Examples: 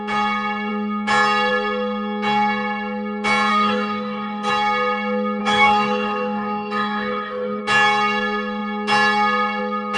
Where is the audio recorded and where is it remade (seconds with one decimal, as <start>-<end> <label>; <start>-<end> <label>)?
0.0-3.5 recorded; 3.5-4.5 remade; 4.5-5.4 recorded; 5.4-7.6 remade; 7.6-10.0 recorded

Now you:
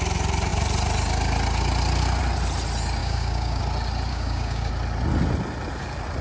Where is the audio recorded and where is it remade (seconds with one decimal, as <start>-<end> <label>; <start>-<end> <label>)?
0.0-3.0 recorded; 3.0-3.6 remade; 3.6-4.1 recorded; 4.1-4.7 remade; 4.7-6.2 recorded

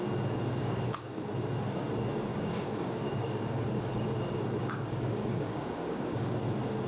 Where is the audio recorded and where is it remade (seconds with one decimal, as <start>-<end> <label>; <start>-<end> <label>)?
0.0-0.6 recorded; 0.6-1.3 remade; 1.3-2.3 recorded; 2.3-6.4 remade; 6.4-6.9 recorded